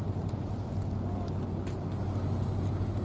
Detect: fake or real real